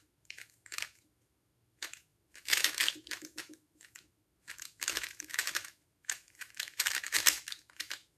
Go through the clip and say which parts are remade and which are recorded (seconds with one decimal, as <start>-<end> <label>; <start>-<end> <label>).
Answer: 0.0-8.2 remade